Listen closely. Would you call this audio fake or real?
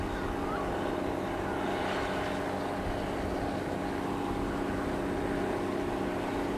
real